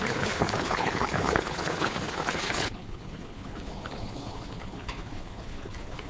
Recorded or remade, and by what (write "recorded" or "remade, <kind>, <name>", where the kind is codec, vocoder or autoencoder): remade, codec, HILCodec